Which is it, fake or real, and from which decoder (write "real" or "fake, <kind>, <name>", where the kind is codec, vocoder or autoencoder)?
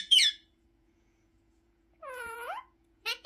fake, vocoder, Vocos